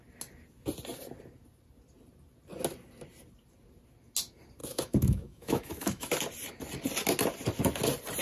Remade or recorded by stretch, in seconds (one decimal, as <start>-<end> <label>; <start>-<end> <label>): 0.0-4.6 recorded; 4.6-6.1 remade; 6.1-8.2 recorded